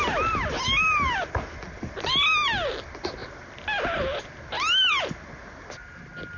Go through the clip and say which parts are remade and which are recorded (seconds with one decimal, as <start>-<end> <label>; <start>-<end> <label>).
0.0-6.4 recorded